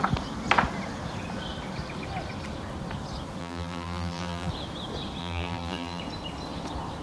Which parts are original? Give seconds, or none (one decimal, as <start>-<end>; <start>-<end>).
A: 0.0-3.4; 4.5-5.2; 6.0-7.0